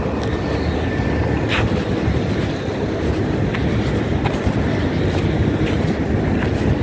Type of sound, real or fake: real